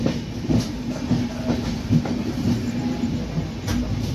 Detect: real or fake real